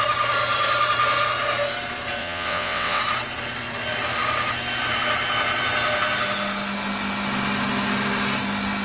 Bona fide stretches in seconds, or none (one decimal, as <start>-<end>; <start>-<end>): 0.0-2.2; 3.0-8.8